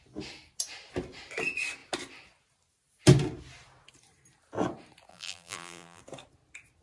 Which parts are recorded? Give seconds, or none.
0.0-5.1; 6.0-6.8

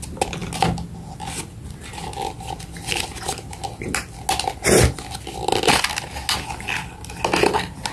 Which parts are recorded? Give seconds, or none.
0.0-7.9

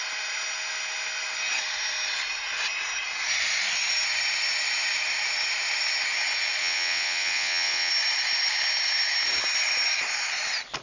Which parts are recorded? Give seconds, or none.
0.0-6.6; 7.9-10.8

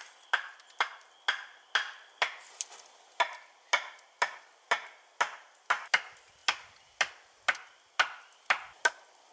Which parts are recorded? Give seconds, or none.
0.0-9.3

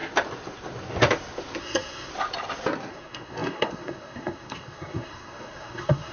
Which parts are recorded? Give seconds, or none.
0.0-1.6; 2.1-2.9

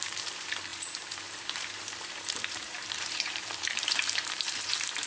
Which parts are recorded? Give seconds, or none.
none

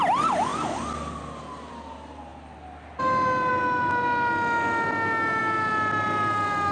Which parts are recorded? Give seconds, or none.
0.0-6.7